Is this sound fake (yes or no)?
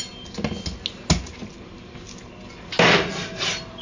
no